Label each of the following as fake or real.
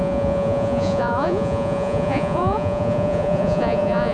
fake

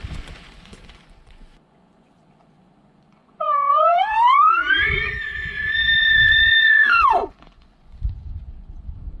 fake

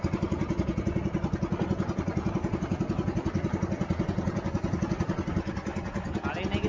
real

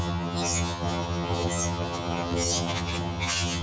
fake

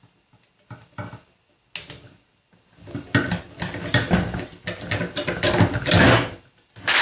real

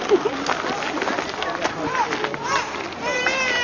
real